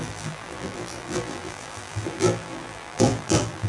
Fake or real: fake